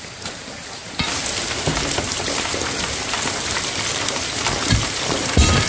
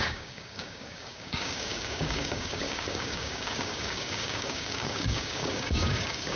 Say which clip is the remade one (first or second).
second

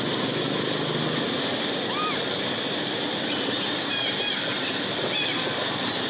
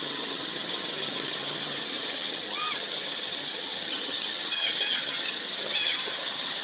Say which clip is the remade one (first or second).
second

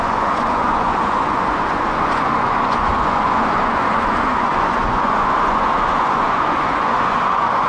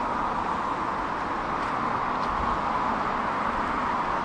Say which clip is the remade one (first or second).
first